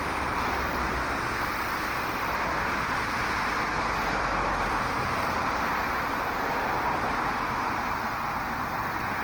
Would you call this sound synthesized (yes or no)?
no